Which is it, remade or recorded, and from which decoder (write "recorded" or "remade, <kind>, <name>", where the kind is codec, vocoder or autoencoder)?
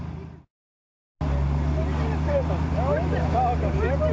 recorded